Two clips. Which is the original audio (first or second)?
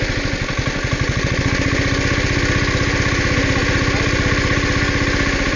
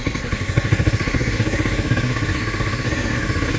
first